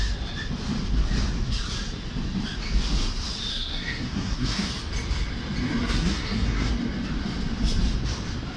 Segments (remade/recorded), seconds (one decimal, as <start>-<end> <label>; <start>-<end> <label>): 0.0-3.5 recorded; 3.5-4.7 remade; 4.7-5.8 recorded; 5.8-6.7 remade; 6.7-8.6 recorded